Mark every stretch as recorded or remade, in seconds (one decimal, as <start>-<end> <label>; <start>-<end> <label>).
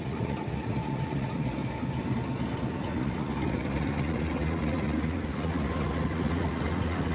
0.0-1.6 remade; 1.6-2.7 recorded; 2.7-7.1 remade